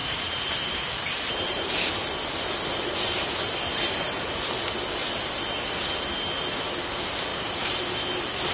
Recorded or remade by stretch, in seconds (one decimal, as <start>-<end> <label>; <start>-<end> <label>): 0.0-1.9 remade; 1.9-3.7 recorded; 3.7-4.5 remade; 4.5-7.3 recorded; 7.3-7.8 remade; 7.8-8.5 recorded